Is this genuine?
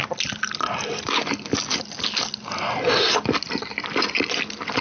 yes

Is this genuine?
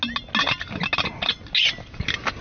yes